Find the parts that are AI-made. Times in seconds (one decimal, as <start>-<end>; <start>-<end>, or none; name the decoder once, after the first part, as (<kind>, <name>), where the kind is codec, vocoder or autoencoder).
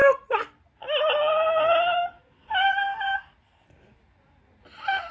none